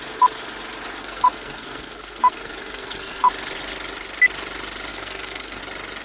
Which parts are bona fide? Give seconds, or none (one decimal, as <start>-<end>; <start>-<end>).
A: 0.0-1.0; 3.3-4.9; 5.6-6.0